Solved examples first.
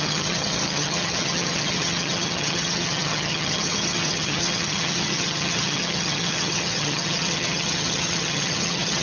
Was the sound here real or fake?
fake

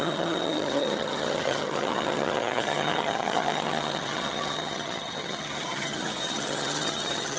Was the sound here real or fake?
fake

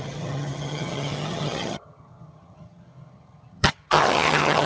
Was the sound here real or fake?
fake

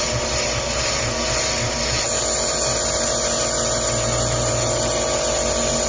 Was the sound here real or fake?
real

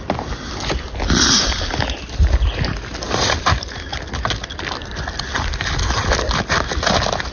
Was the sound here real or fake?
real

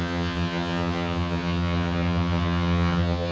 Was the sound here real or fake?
fake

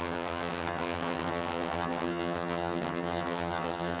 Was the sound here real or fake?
fake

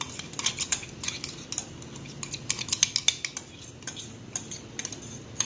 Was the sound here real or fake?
real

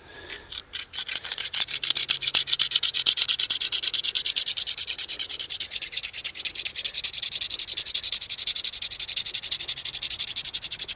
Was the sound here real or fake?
real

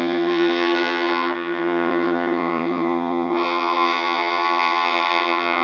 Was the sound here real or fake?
fake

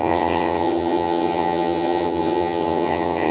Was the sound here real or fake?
fake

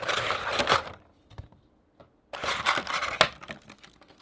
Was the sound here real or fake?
real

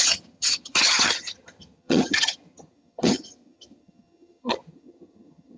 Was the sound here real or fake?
fake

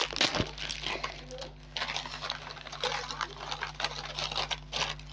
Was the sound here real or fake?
real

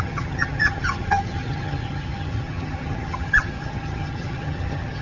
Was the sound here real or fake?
fake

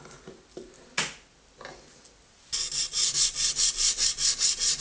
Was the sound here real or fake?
real